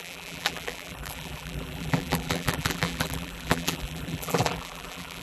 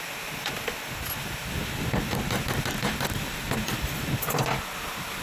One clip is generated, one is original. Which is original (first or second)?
second